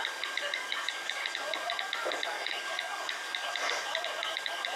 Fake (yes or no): yes